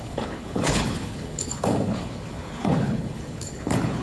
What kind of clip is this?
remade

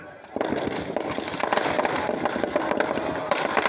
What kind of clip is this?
recorded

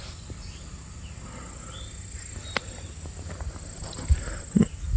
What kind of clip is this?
recorded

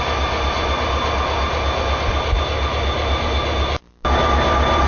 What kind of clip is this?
recorded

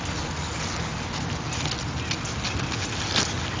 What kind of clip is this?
recorded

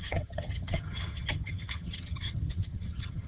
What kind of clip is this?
remade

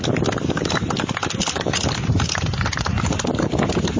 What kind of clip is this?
recorded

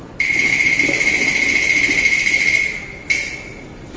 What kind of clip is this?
recorded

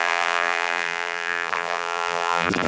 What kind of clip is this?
remade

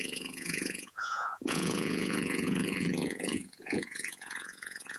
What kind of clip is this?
remade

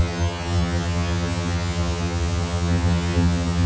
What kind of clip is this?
remade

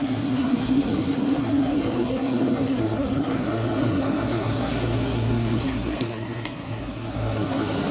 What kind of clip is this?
remade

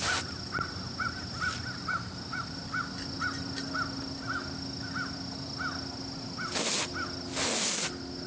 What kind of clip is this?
recorded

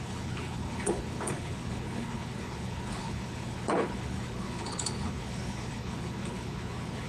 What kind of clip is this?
remade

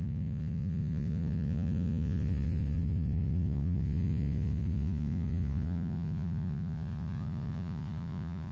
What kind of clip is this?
remade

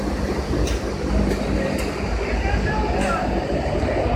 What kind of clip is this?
recorded